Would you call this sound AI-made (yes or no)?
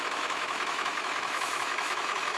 yes